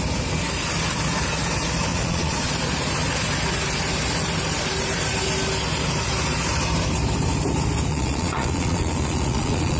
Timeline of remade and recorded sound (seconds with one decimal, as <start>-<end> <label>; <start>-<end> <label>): 0.0-1.9 recorded; 1.9-2.5 remade; 2.5-7.9 recorded; 7.9-9.8 remade